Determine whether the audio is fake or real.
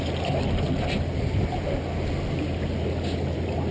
real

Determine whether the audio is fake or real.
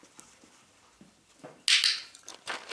real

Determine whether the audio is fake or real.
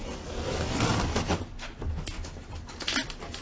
real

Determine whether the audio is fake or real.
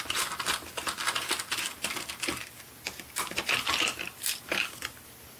real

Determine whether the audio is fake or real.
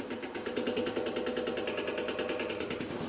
real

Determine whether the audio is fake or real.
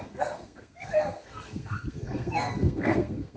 fake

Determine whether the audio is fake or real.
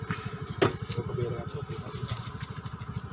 real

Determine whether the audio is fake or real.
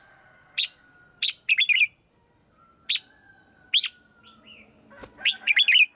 real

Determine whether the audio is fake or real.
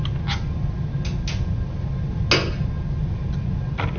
real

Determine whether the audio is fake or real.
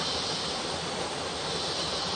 fake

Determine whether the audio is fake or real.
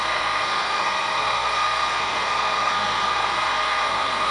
fake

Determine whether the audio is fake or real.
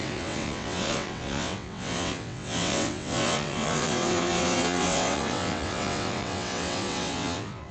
fake